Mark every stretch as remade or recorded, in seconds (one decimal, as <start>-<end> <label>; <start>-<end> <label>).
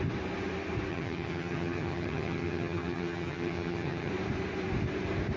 0.0-0.9 recorded; 0.9-4.1 remade; 4.1-5.4 recorded